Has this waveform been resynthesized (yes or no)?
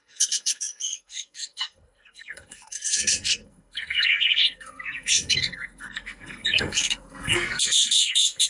yes